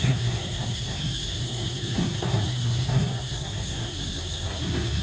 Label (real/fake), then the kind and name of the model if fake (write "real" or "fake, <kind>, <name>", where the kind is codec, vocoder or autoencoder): fake, codec, SNAC